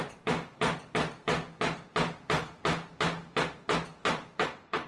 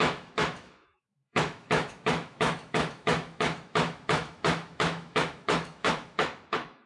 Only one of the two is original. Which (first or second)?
first